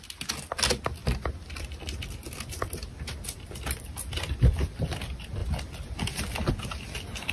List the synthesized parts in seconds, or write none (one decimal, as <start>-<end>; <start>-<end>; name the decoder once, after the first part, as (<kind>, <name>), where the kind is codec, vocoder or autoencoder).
none

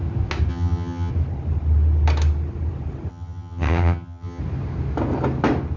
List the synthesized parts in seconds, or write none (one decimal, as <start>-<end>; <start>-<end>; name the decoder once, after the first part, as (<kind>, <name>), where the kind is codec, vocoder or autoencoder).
0.5-1.1 (vocoder, HiFi-GAN); 3.1-4.4